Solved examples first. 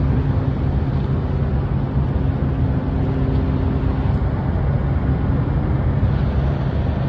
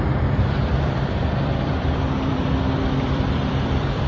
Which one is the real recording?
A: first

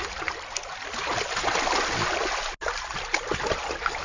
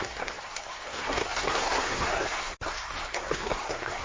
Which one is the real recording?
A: first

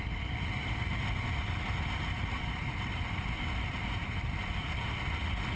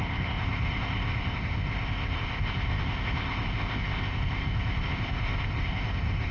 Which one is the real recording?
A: first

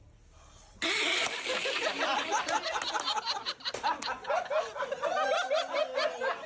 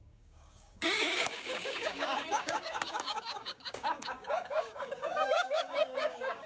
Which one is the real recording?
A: first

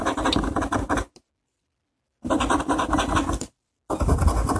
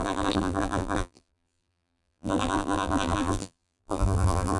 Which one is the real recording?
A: first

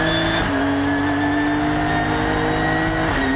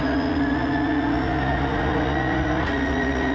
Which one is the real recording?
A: first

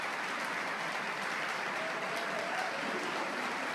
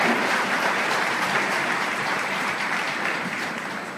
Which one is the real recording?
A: first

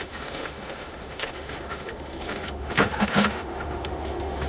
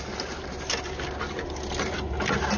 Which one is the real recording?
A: second